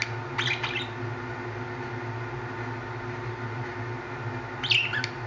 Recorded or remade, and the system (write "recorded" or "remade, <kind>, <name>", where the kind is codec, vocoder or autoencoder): recorded